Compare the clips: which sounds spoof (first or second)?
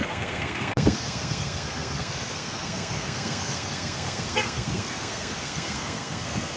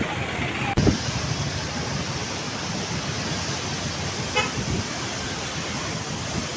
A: first